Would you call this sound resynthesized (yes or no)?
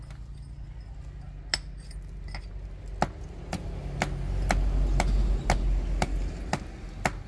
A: no